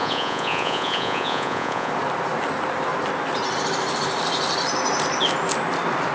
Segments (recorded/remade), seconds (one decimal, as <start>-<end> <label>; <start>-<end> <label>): 0.0-1.9 remade; 1.9-6.1 recorded